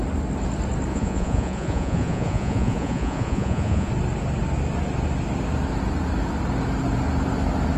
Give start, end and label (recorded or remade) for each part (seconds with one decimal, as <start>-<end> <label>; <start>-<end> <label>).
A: 0.0-0.9 recorded; 0.9-3.9 remade; 3.9-7.8 recorded